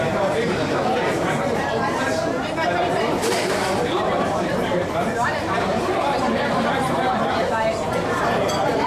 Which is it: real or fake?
fake